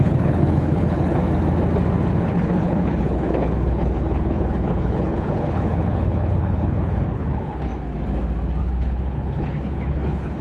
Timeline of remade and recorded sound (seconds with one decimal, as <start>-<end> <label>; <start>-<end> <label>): 0.0-1.2 remade; 1.2-2.2 recorded; 2.2-7.7 remade; 7.7-8.6 recorded; 8.6-10.4 remade